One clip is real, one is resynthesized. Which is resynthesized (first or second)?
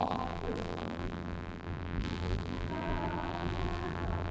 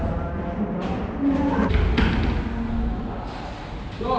first